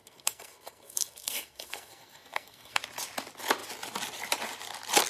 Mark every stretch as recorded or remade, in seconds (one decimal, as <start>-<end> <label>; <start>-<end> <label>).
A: 0.0-2.8 remade; 2.8-5.1 recorded